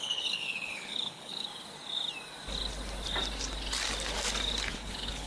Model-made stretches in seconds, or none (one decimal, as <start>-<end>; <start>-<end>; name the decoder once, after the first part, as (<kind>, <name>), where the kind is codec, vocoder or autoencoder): 0.0-1.5 (codec, HILCodec); 4.7-5.3